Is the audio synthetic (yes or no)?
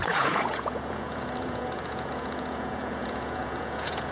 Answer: yes